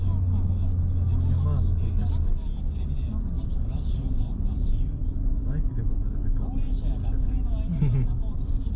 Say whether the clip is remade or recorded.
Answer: recorded